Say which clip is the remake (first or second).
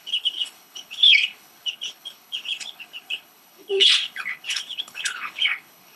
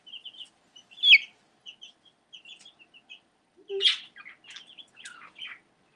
first